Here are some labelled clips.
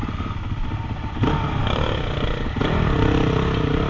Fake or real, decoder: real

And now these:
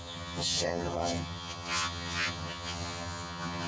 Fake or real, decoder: fake, vocoder, HiFi-GAN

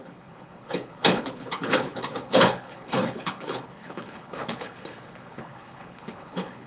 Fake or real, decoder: fake, codec, HILCodec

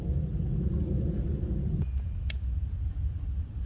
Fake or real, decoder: real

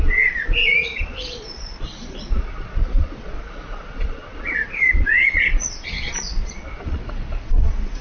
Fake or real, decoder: fake, vocoder, Vocos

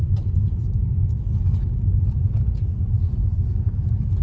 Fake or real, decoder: real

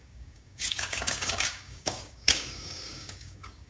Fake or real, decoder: fake, codec, DAC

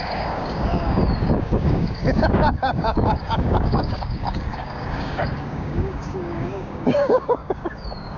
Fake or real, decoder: fake, codec, DAC